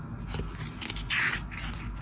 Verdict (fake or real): real